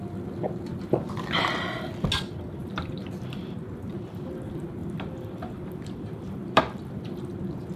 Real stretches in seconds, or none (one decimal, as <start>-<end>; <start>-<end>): 0.0-2.6; 3.6-4.8; 7.2-7.8